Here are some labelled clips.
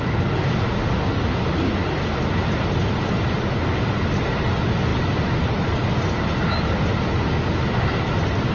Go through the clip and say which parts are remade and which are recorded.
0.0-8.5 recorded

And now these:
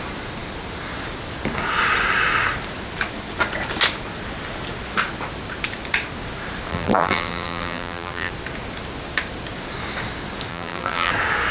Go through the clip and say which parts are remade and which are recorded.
0.0-6.7 recorded; 6.7-8.3 remade; 8.3-10.5 recorded; 10.5-11.1 remade; 11.1-11.5 recorded

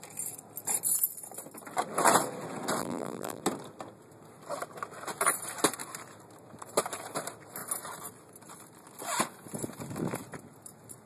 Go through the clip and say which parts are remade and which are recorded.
0.0-2.8 recorded; 2.8-3.4 remade; 3.4-11.1 recorded

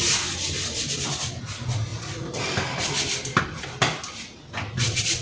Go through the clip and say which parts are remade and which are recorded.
0.0-1.9 recorded; 1.9-3.4 remade; 3.4-5.2 recorded

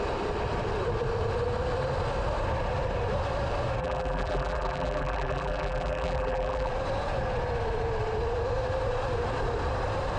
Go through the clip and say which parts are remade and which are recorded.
0.0-3.8 recorded; 3.8-6.7 remade; 6.7-10.2 recorded